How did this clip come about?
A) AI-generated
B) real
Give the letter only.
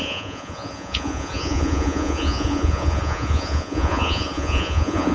A